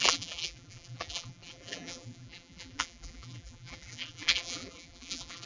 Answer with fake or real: fake